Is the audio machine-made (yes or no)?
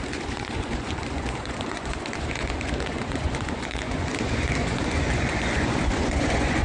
yes